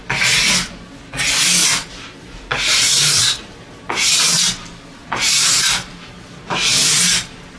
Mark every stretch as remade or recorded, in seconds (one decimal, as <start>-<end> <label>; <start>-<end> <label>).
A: 0.0-1.6 recorded; 1.6-4.1 remade; 4.1-5.0 recorded; 5.0-5.6 remade; 5.6-7.6 recorded